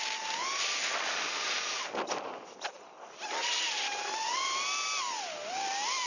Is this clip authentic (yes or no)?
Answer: yes